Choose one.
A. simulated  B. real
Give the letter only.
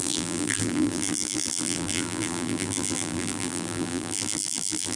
A